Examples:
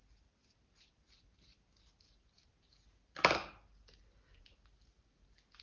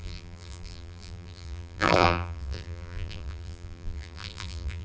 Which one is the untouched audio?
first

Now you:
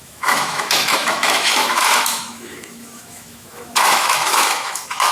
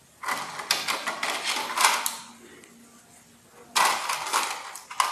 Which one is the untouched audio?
second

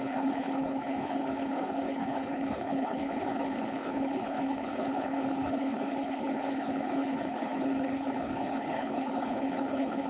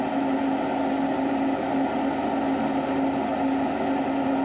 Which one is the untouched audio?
second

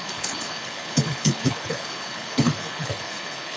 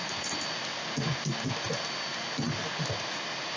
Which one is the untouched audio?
second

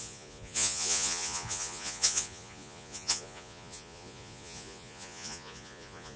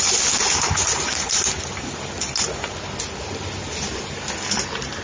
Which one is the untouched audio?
second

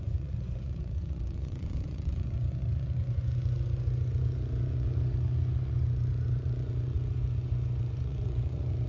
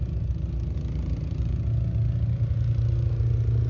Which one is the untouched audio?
second